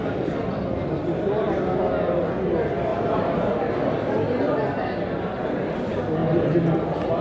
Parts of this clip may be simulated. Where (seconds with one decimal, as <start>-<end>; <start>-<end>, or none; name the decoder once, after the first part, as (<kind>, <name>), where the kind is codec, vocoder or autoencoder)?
2.9-3.6 (vocoder, BigVGAN v2)